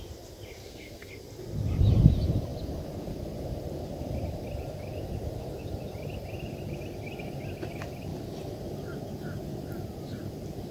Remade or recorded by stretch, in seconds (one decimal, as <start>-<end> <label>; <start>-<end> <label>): 0.0-0.6 recorded; 0.6-1.1 remade; 1.1-10.7 recorded